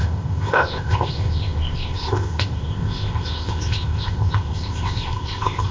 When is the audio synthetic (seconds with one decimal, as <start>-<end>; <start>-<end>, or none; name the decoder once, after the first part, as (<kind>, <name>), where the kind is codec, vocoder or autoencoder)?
0.0-5.7 (codec, ZipCodec)